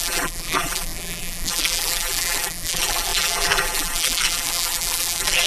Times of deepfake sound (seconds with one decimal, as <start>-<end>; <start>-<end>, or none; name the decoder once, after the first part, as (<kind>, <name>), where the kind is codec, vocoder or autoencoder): 0.0-5.5 (vocoder, BigVGAN v2)